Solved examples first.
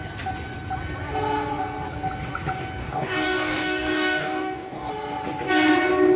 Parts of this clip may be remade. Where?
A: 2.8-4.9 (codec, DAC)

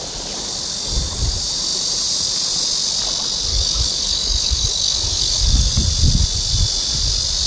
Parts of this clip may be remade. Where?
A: 3.5-5.7 (codec, DAC)

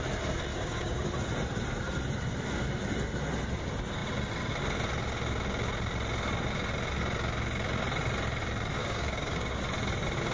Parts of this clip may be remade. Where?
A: 0.5-1.1 (codec, DAC); 8.8-9.6

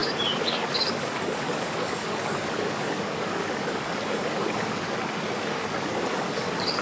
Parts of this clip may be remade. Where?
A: 0.0-6.8 (codec, DAC)

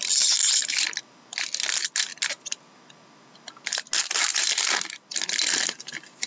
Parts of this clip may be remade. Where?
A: none

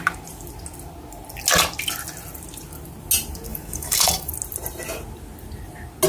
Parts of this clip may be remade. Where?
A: 3.5-4.3 (codec, DAC)

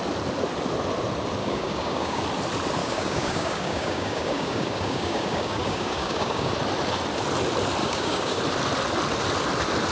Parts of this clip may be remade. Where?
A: 1.4-2.2 (codec, DAC); 2.8-6.5; 7.8-8.4